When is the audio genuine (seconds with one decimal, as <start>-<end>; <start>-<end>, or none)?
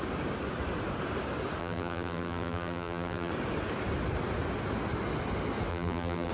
0.0-1.6; 3.3-5.7